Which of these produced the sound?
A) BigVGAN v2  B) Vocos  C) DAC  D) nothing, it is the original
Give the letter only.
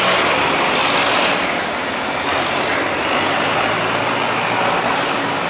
D